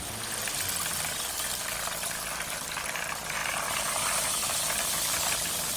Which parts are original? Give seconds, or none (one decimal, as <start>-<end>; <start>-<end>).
0.0-0.8; 2.9-3.4; 4.8-5.8